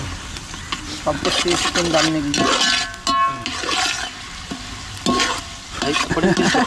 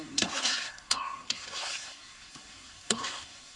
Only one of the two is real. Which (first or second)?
first